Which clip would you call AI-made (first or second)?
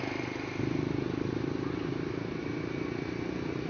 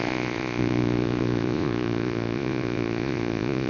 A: second